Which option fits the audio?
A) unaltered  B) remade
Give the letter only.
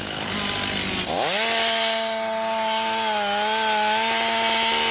A